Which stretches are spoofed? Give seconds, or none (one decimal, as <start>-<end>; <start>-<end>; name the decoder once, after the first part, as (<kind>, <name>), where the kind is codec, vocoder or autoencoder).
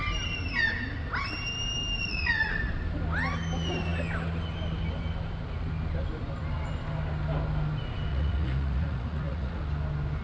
2.0-2.7 (vocoder, Vocos); 8.1-9.6